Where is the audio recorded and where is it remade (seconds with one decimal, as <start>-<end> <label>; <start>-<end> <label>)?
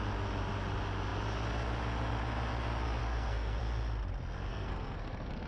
0.0-3.0 recorded; 3.0-3.6 remade; 3.6-4.5 recorded; 4.5-5.5 remade